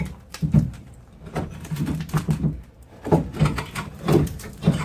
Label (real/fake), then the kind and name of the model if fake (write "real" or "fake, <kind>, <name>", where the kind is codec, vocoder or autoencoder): fake, vocoder, BigVGAN v2